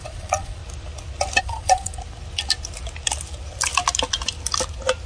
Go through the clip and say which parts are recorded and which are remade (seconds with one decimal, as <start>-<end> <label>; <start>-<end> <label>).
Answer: 0.0-0.6 remade; 0.6-1.4 recorded; 1.4-1.9 remade; 1.9-5.1 recorded